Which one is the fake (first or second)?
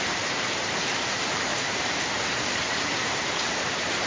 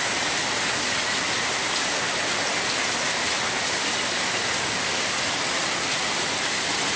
first